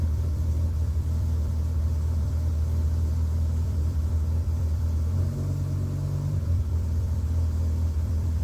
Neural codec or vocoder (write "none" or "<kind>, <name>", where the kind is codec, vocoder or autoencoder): vocoder, BigVGAN v2